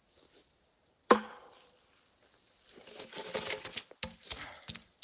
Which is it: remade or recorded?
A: recorded